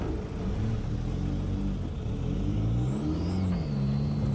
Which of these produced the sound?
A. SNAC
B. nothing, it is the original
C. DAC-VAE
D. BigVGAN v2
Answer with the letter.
B